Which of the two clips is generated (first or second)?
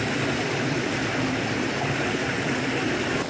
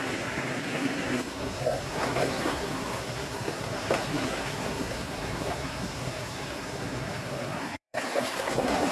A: second